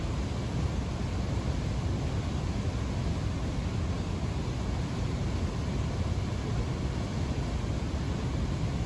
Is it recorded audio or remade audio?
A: recorded